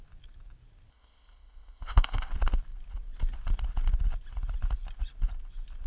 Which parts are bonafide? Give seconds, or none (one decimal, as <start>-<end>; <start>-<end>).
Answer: 0.0-0.9; 2.3-5.9

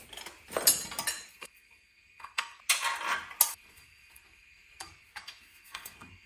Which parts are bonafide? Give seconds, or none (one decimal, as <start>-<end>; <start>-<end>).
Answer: 0.0-1.3; 2.6-3.5

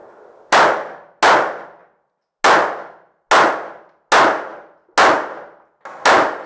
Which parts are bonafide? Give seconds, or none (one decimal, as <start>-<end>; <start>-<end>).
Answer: 0.0-6.5

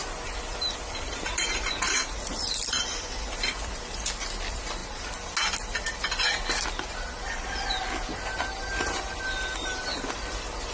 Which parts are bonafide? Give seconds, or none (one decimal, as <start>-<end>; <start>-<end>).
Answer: 4.8-8.7

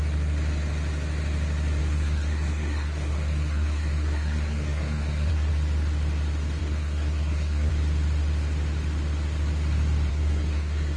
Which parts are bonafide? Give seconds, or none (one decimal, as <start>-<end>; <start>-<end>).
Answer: 0.0-1.8; 5.5-6.6; 7.7-10.1